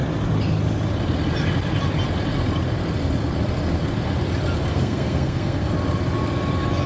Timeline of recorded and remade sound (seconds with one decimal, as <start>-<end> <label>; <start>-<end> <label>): 0.0-4.7 recorded; 4.7-5.7 remade; 5.7-6.9 recorded